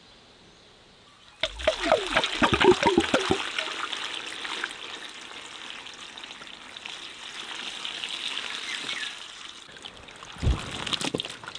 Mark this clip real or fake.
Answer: real